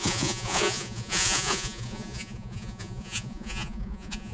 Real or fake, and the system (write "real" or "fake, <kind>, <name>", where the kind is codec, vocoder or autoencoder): fake, vocoder, Vocos